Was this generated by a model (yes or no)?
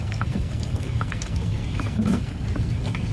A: yes